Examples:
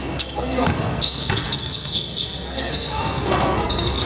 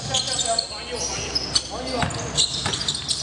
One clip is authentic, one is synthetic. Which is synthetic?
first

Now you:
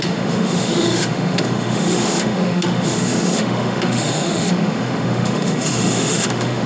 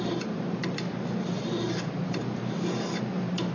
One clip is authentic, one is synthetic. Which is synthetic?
first